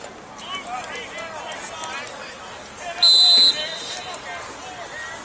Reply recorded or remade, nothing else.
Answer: recorded